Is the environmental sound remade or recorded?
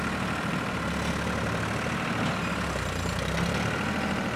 recorded